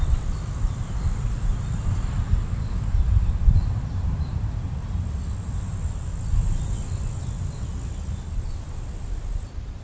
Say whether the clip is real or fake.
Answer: real